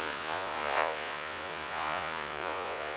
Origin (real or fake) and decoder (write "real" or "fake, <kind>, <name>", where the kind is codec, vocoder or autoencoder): fake, vocoder, Vocos